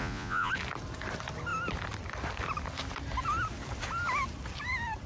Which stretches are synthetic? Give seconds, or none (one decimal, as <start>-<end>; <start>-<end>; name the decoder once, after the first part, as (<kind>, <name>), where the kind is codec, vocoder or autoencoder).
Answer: 0.0-0.5 (vocoder, Vocos)